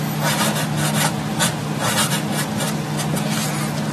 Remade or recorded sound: recorded